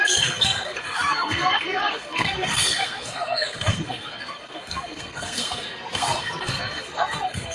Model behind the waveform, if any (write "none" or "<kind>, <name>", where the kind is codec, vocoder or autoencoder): codec, SNAC